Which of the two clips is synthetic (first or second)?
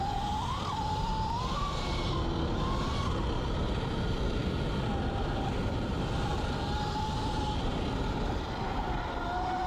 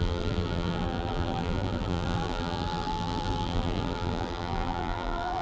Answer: second